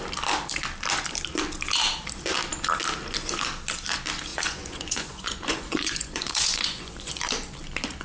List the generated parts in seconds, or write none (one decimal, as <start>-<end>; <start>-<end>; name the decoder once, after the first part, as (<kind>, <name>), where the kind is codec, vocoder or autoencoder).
4.3-7.2 (vocoder, Vocos)

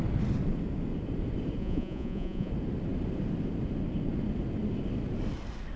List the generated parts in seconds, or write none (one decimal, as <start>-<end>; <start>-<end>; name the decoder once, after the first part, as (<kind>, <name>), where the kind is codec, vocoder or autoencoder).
1.6-2.5 (vocoder, Vocos)

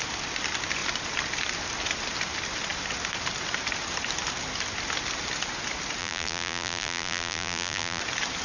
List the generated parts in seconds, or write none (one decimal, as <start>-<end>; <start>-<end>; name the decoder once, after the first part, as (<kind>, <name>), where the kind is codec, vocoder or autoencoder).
6.0-8.0 (vocoder, BigVGAN v2)

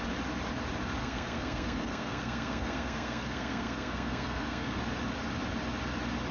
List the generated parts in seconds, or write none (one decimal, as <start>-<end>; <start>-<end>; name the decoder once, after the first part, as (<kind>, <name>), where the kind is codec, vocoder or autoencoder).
1.0-4.8 (codec, SNAC)

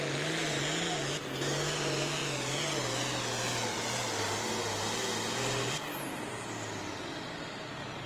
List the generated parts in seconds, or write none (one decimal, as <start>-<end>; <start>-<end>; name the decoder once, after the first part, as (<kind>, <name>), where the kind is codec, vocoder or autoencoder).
none